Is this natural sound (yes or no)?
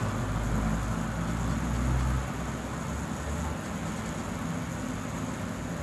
yes